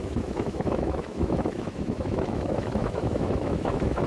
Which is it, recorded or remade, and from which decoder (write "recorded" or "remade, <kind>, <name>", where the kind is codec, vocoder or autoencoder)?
remade, autoencoder, DAC-VAE